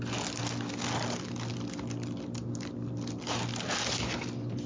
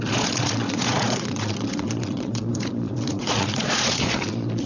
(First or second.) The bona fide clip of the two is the first